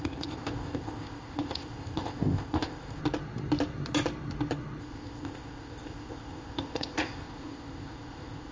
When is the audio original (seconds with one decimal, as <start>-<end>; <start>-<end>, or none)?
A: 3.0-4.8